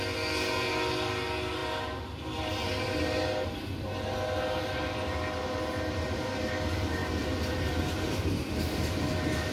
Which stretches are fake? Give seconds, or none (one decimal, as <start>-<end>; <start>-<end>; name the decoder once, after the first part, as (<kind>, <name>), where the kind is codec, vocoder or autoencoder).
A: none